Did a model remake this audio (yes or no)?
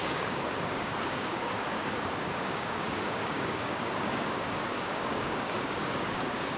yes